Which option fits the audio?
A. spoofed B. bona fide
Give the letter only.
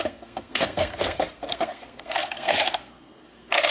A